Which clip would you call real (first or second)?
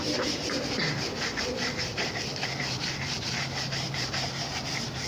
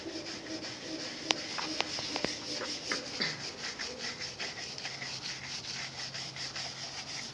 second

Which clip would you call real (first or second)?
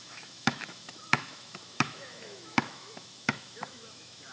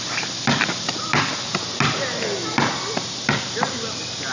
second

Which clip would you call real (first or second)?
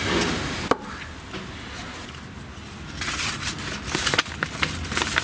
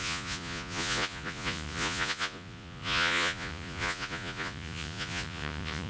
first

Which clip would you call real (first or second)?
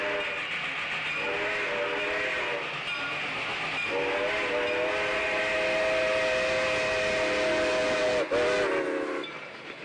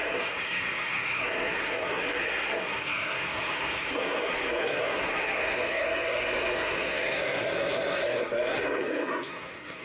first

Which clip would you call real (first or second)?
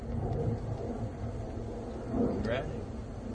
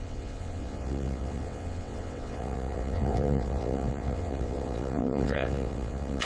first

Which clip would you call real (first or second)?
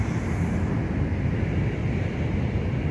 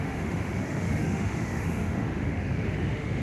first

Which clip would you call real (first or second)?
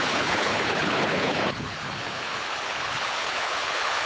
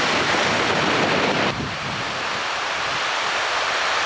second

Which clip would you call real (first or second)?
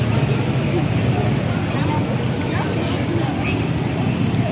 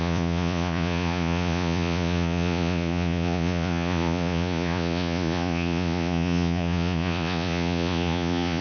first